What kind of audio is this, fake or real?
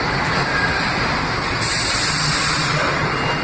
real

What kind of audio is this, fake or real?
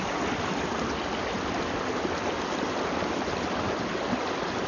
real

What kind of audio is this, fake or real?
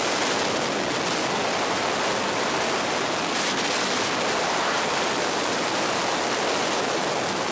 real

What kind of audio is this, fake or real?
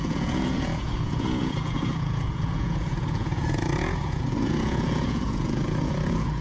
fake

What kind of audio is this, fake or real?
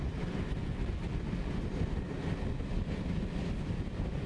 real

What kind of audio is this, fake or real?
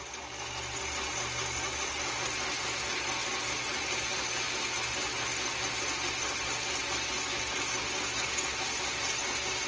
real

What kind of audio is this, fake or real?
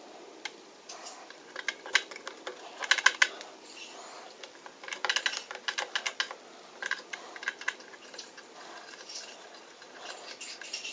real